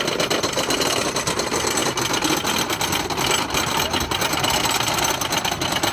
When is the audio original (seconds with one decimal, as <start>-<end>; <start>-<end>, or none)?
0.0-5.9